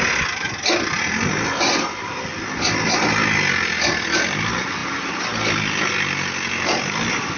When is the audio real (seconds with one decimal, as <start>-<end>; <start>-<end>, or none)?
0.0-7.4